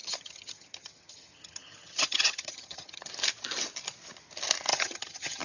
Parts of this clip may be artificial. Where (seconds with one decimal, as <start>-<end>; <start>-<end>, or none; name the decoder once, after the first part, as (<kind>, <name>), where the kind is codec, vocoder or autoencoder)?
0.0-3.1 (vocoder, HiFi-GAN); 4.7-5.4